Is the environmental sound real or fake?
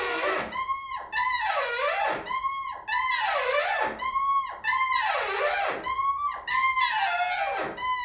real